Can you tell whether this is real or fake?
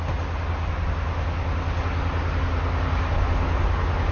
real